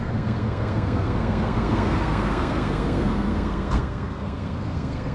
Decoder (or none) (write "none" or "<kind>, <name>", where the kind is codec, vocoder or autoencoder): codec, SNAC